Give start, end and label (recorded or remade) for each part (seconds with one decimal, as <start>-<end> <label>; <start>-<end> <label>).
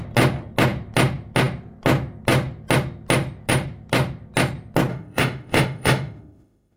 0.0-4.9 recorded; 4.9-6.8 remade